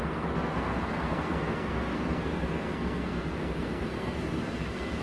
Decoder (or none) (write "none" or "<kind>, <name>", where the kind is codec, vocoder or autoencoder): codec, SNAC